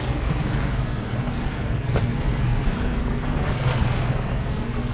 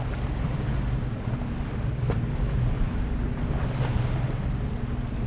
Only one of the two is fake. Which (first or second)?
first